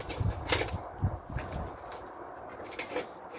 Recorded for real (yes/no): yes